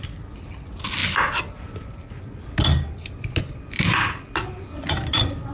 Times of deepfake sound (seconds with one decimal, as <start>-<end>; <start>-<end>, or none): none